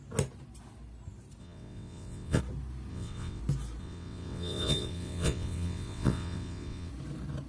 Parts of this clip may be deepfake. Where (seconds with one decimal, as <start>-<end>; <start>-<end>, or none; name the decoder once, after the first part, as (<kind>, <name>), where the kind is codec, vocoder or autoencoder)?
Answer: 1.4-2.4 (vocoder, WaveNeXt); 2.9-3.4; 3.8-6.9